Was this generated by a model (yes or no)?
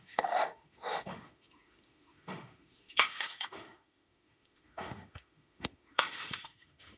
yes